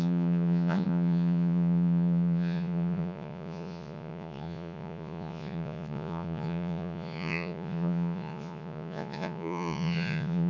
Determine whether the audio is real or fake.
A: fake